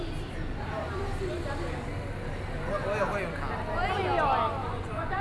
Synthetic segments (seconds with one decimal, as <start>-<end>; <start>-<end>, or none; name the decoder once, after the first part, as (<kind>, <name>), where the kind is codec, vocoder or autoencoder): 4.6-5.2 (vocoder, Vocos)